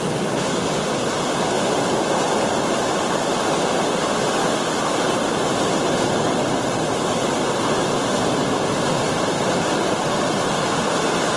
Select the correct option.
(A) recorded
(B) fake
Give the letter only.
A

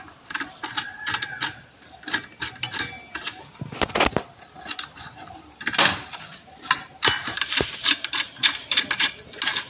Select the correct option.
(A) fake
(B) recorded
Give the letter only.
B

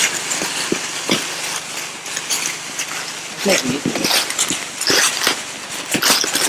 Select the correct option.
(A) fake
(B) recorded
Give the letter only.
B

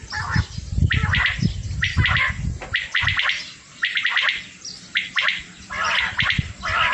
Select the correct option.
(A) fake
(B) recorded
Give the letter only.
B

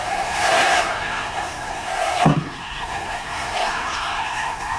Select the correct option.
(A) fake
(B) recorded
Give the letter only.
A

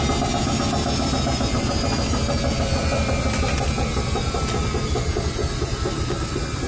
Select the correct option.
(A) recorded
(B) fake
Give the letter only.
A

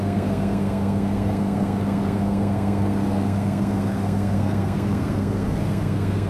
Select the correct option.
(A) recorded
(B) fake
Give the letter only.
B